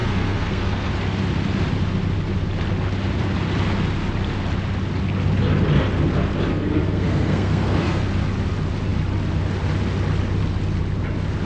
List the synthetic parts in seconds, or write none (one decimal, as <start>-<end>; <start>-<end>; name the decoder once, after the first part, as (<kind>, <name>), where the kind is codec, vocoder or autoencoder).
0.0-0.9 (codec, SNAC); 6.5-8.0

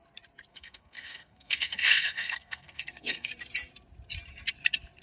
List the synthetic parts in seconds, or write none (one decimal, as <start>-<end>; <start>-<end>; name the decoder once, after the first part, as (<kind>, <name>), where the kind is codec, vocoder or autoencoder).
0.5-3.3 (codec, SNAC)

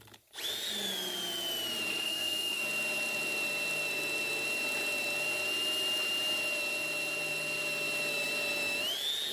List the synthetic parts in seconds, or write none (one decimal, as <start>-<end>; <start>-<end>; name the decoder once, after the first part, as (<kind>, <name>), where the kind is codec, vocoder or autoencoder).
1.9-2.6 (codec, SNAC)

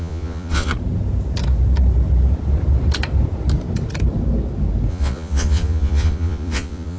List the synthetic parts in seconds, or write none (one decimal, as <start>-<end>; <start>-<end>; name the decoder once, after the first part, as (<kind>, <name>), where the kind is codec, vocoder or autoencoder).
0.0-0.7 (vocoder, Vocos); 4.9-7.0

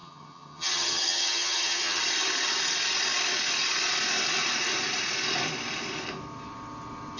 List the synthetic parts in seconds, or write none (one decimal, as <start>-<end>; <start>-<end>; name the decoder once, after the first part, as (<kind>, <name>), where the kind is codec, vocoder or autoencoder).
0.0-2.0 (vocoder, HiFi-GAN)

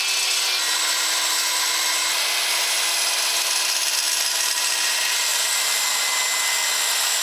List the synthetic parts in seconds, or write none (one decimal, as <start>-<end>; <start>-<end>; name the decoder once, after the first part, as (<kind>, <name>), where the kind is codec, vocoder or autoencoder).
5.3-6.0 (vocoder, BigVGAN v2)

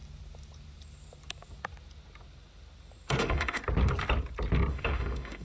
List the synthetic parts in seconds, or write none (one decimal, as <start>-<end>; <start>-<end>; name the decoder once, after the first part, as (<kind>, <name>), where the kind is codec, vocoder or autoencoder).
3.2-3.6 (autoencoder, DAC-VAE); 4.7-5.4

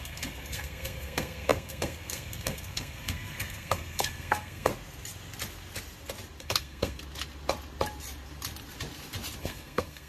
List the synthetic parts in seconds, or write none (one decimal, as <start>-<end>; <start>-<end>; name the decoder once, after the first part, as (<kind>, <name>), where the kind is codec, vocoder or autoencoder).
0.0-4.7 (codec, SNAC); 6.4-7.0; 9.4-10.1